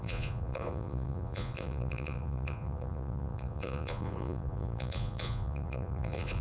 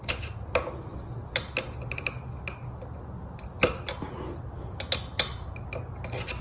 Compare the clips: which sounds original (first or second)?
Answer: second